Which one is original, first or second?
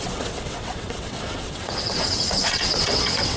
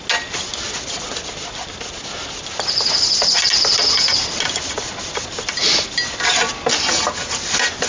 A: second